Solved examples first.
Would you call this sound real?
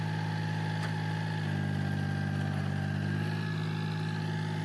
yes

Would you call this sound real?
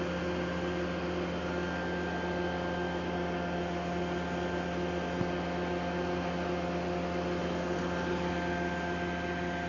yes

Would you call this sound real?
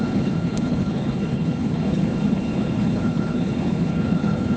no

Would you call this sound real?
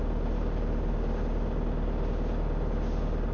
yes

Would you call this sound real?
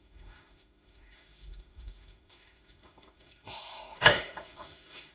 no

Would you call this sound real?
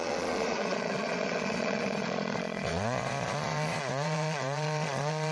no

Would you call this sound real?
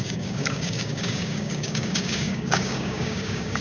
no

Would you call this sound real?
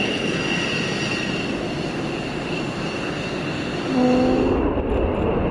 yes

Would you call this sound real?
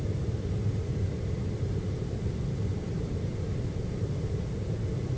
yes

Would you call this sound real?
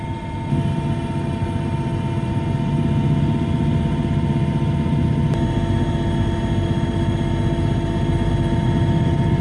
yes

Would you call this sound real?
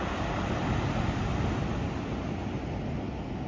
yes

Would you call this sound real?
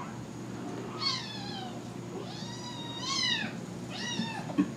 yes